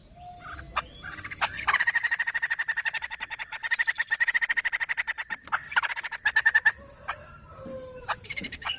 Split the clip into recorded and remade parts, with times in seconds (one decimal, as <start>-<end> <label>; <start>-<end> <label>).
0.0-0.7 recorded; 0.7-2.0 remade; 2.0-6.6 recorded; 6.6-8.8 remade